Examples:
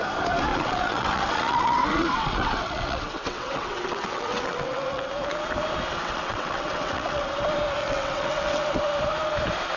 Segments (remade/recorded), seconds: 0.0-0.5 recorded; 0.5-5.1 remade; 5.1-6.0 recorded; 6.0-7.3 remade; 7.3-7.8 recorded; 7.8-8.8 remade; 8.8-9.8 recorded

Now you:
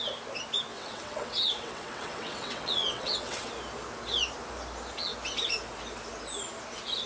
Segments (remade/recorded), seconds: 0.0-0.7 recorded; 0.7-3.5 remade; 3.5-7.1 recorded